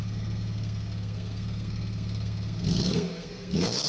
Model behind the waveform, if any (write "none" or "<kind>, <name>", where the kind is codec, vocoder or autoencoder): codec, SNAC